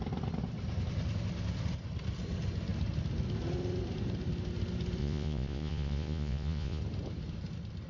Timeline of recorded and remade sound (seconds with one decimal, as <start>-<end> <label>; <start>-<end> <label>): 0.0-5.0 recorded; 5.0-6.8 remade; 6.8-7.9 recorded